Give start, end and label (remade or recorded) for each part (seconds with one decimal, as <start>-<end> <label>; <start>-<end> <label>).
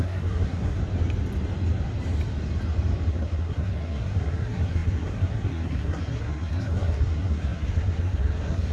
0.0-0.8 remade; 0.8-3.1 recorded; 3.1-8.7 remade